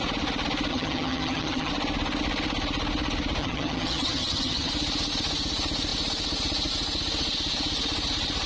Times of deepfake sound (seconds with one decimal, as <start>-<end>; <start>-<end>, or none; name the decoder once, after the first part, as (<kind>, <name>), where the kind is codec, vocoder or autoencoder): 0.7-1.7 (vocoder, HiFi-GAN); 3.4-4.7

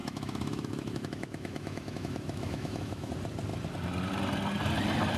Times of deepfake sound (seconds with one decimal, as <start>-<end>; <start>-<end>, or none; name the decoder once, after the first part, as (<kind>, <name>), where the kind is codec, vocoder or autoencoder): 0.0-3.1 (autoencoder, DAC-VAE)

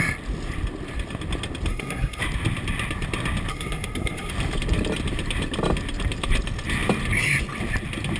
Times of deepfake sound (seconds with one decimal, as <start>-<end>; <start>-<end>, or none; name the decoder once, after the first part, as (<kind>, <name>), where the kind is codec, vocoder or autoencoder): 1.7-2.2 (codec, SNAC); 3.5-4.3

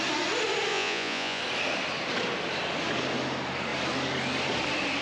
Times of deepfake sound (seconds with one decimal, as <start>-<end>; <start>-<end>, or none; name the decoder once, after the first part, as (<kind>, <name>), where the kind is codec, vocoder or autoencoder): 0.7-1.4 (vocoder, Vocos)